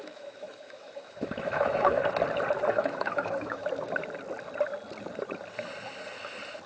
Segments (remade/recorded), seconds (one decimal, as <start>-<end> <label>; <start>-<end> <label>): 0.0-2.0 remade; 2.0-2.7 recorded; 2.7-3.6 remade; 3.6-6.7 recorded